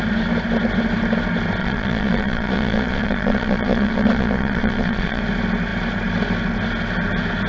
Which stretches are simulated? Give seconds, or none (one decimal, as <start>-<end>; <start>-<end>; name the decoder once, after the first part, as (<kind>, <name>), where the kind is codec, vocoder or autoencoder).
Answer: 1.6-5.2 (vocoder, Vocos)